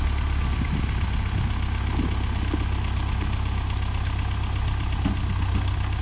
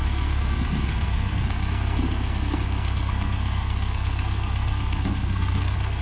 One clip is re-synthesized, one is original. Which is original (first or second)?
first